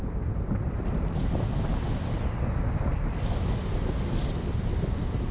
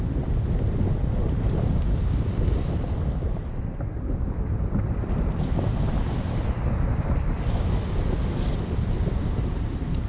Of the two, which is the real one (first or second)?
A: first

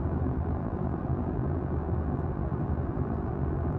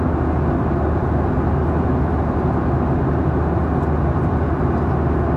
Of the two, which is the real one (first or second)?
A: second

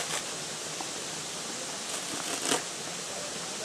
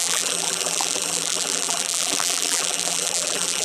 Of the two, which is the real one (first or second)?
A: first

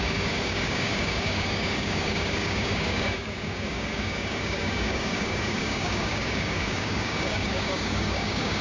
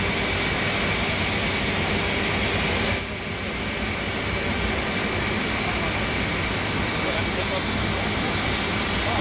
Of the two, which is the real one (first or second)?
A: second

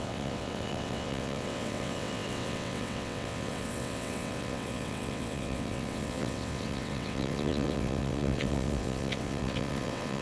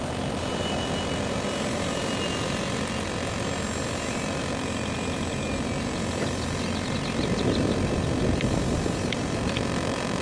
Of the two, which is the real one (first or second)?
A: second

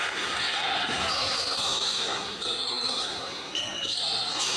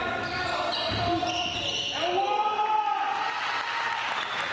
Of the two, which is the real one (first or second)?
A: second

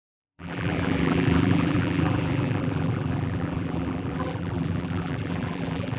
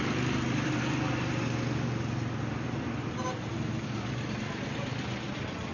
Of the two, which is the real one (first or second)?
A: second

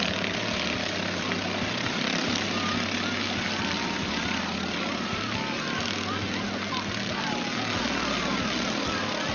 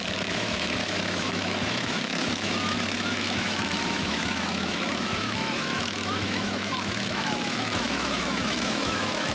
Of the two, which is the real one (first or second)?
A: first